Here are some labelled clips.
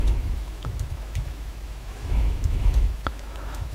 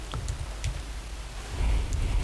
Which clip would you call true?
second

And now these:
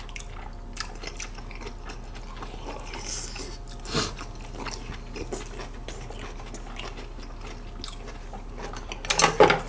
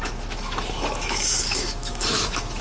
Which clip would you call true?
first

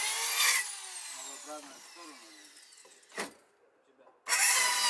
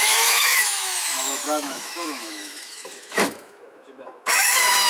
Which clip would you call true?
first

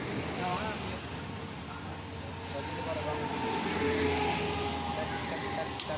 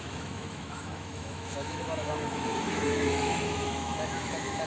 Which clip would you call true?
first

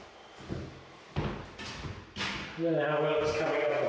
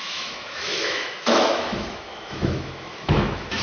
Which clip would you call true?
first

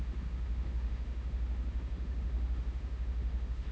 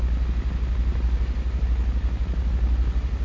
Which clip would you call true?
second